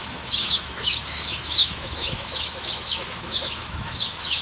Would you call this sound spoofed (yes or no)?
yes